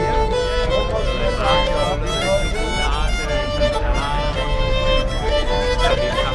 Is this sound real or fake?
real